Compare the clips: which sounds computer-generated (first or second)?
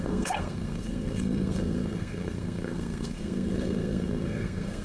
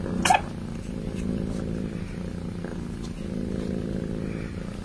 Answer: first